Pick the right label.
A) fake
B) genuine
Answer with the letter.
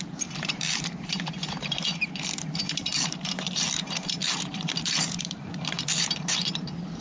A